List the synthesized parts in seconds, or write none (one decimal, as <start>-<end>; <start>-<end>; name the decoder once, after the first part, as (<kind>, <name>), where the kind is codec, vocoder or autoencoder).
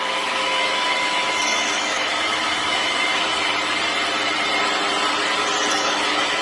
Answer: 0.0-3.5 (autoencoder, DAC-VAE); 5.7-6.4